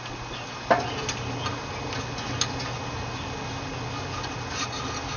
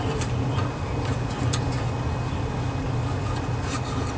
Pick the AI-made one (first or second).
second